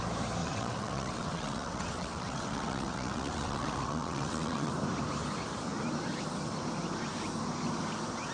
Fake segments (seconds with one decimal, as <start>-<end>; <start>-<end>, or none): 0.4-4.7